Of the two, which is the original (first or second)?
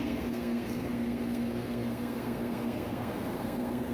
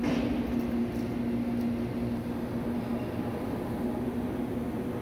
second